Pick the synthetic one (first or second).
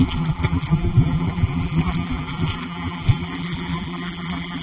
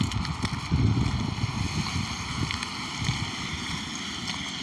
first